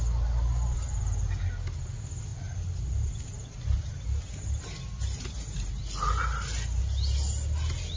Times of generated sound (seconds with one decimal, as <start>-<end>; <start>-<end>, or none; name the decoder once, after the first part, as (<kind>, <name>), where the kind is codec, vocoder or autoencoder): none